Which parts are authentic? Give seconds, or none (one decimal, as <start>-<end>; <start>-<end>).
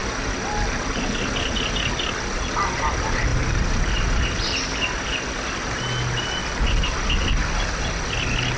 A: 0.0-8.6